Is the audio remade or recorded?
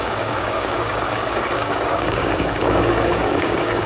remade